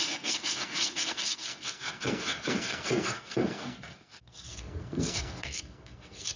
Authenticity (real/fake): fake